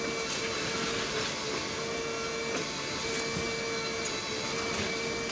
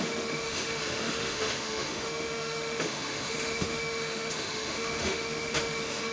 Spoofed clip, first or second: second